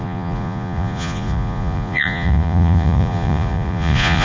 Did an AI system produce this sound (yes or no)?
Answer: yes